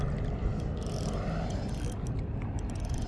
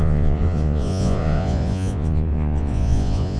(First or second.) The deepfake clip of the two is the second